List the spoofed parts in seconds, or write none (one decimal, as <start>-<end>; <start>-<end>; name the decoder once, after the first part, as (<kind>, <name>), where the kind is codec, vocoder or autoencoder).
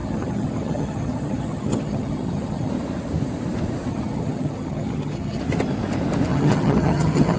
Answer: 0.0-2.7 (vocoder, HiFi-GAN); 3.9-5.4; 6.3-7.4